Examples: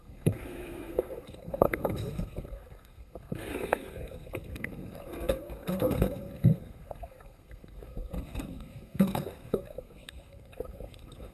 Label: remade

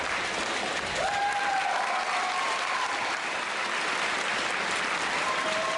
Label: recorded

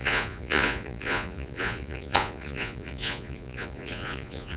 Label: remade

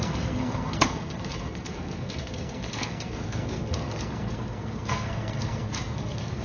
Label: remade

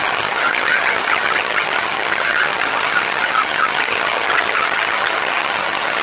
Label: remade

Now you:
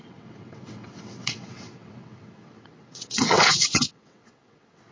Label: remade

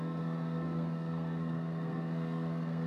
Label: remade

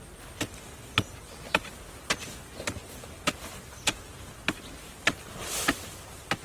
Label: recorded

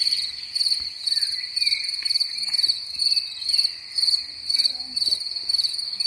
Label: recorded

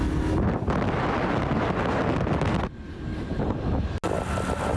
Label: recorded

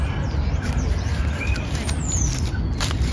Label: recorded